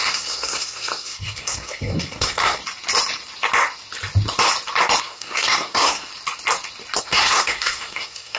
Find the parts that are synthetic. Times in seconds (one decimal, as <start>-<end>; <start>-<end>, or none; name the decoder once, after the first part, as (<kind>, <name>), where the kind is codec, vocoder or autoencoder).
0.0-2.6 (codec, SNAC); 5.0-6.1; 7.0-8.4